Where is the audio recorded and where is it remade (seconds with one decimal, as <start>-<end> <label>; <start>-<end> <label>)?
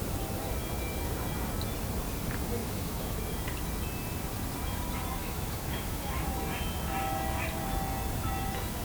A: 0.0-2.6 recorded; 2.6-3.3 remade; 3.3-5.2 recorded; 5.2-6.1 remade; 6.1-8.8 recorded